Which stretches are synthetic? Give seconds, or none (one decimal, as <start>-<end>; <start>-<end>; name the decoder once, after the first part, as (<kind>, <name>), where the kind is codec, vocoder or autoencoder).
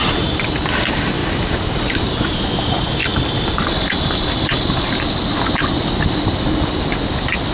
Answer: 1.2-2.4 (vocoder, BigVGAN v2)